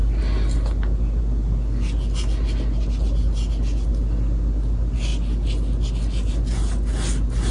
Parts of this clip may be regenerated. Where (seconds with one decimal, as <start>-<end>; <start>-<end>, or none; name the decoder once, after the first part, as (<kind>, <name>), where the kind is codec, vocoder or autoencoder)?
none